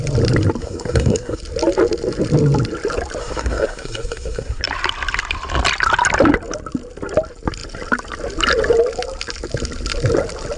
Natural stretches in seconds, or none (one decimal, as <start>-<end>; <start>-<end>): 0.0-0.6; 1.4-3.2; 4.6-10.6